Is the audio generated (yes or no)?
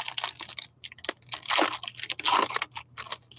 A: no